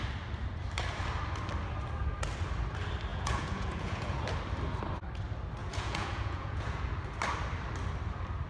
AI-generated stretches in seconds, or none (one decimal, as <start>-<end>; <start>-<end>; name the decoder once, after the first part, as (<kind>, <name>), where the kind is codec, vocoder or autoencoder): 3.1-4.2 (vocoder, Vocos); 5.6-6.8